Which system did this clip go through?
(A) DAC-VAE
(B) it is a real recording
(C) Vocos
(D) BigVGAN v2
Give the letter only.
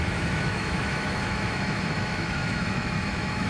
A